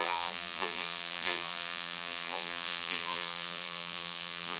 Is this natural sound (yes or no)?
no